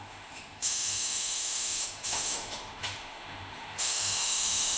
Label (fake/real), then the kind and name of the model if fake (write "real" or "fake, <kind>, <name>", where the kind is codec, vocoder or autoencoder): fake, autoencoder, DAC-VAE